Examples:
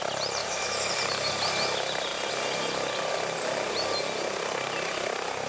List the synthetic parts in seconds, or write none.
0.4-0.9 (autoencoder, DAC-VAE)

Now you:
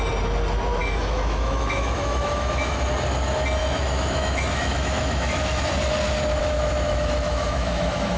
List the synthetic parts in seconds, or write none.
0.8-2.8 (autoencoder, DAC-VAE); 3.6-5.6; 6.4-8.2

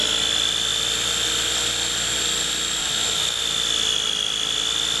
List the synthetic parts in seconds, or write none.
2.8-3.4 (autoencoder, DAC-VAE)